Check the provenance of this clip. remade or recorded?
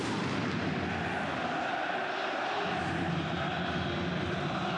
recorded